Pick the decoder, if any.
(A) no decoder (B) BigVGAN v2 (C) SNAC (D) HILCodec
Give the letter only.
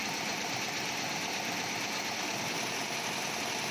A